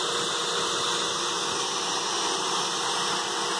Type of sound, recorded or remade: recorded